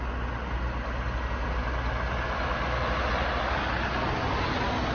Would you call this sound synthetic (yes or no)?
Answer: no